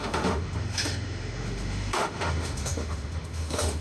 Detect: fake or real fake